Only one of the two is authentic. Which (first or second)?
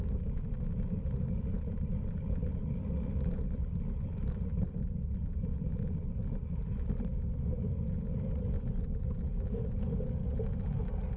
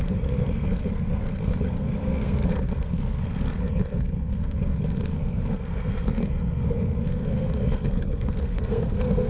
first